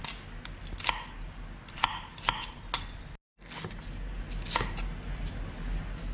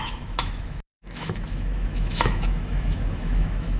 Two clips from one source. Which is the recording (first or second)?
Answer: first